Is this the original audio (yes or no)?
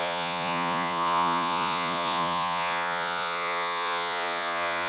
no